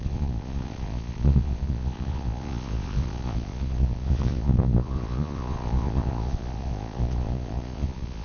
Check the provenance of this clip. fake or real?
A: fake